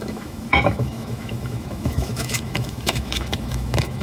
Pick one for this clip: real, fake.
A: fake